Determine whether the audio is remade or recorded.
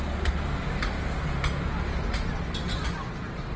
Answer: recorded